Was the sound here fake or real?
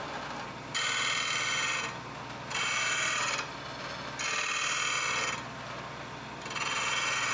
real